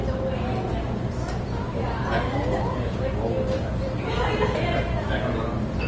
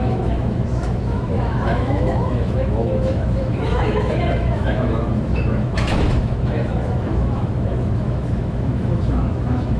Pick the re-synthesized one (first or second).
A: second